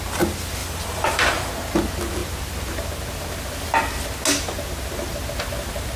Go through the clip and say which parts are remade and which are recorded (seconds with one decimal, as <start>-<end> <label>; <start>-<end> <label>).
0.0-0.6 recorded; 0.6-1.5 remade; 1.5-6.0 recorded